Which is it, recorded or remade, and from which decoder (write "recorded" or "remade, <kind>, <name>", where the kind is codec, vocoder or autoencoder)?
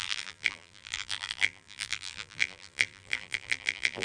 remade, vocoder, BigVGAN v2